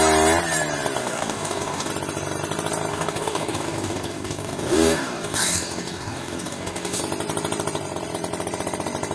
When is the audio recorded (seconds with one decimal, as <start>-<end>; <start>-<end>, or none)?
0.0-1.0; 1.9-2.9; 7.0-9.1